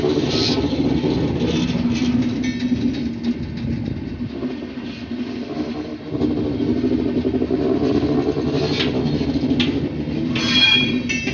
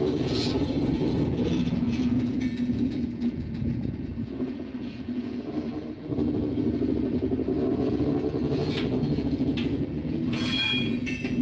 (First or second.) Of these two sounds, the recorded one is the first